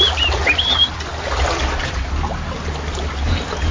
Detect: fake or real real